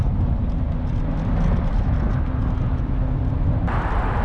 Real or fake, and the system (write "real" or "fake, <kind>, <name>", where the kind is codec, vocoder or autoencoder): real